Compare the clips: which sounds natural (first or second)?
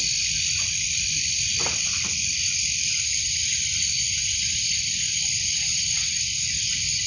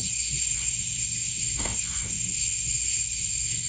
first